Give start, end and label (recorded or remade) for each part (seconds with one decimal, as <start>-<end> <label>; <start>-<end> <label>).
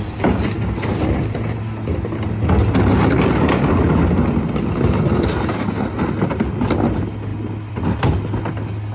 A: 0.0-7.3 recorded; 7.3-8.4 remade; 8.4-8.9 recorded